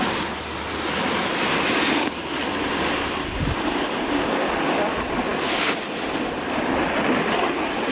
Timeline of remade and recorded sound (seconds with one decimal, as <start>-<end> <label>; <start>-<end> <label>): 0.0-7.9 recorded